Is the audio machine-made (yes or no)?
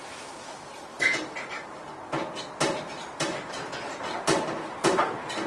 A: yes